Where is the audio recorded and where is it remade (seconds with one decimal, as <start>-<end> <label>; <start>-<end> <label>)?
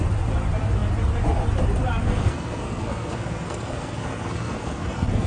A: 0.0-2.0 recorded; 2.0-5.3 remade